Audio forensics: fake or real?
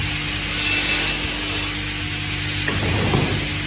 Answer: real